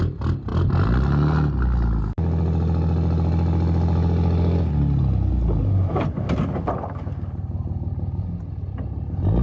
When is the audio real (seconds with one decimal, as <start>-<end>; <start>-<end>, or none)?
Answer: 0.0-9.4